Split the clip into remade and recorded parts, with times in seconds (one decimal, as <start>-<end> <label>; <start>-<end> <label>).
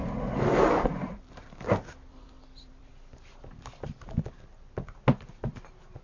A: 0.0-0.6 recorded; 0.6-2.9 remade; 2.9-6.0 recorded